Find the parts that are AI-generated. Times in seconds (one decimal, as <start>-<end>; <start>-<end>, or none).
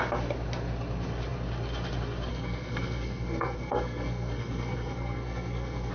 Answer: 2.3-5.9